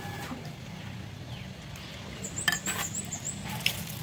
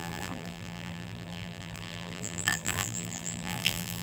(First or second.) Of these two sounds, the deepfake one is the second